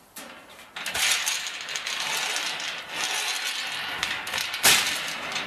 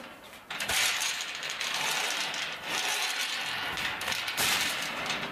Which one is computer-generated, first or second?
second